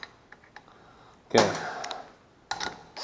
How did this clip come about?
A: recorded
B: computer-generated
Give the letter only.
A